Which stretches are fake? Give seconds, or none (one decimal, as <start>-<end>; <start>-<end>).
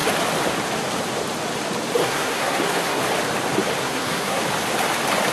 2.0-3.0; 3.8-4.4